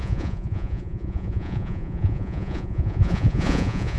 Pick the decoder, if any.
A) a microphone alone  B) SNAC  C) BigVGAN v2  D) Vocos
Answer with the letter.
D